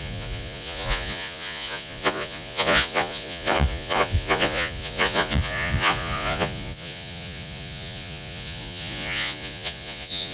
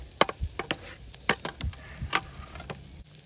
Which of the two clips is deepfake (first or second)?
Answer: first